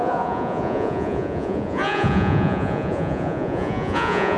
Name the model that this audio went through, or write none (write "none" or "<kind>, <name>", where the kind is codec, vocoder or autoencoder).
vocoder, Vocos